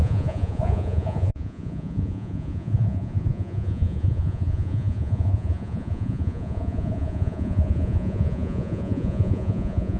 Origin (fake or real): fake